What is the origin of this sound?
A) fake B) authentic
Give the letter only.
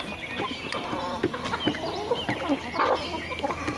B